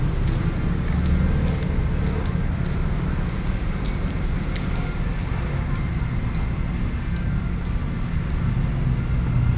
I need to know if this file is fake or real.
real